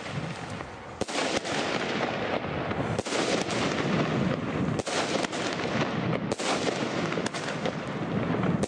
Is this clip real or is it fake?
real